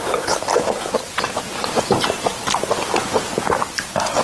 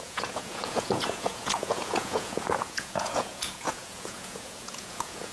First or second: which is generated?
second